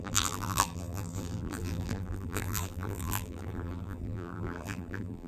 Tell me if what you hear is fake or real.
fake